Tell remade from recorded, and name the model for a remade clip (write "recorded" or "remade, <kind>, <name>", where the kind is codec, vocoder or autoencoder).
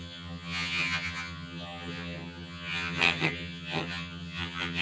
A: remade, vocoder, HiFi-GAN